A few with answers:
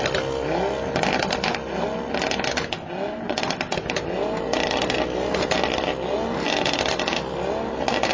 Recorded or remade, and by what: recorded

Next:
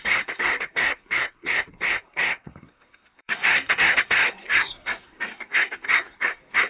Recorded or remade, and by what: remade, codec, SNAC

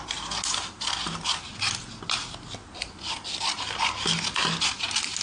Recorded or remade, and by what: recorded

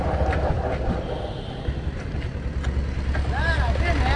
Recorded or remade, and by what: recorded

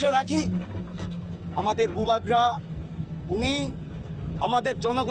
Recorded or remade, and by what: remade, codec, SNAC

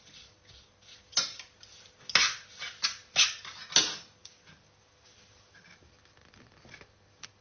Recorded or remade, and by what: recorded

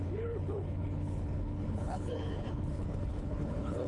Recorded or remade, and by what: remade, codec, HILCodec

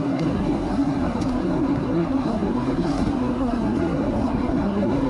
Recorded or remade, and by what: remade, codec, SNAC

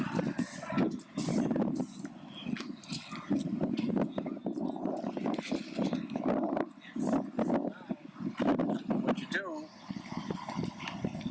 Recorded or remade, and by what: recorded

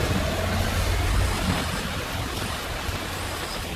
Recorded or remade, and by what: recorded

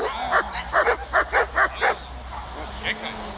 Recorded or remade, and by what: recorded